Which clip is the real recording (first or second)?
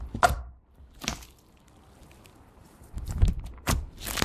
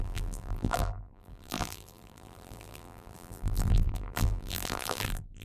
first